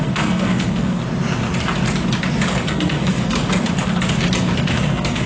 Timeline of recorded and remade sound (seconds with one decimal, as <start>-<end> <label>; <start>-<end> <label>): 0.0-1.0 remade; 1.0-2.7 recorded; 2.7-3.4 remade; 3.4-4.6 recorded; 4.6-5.3 remade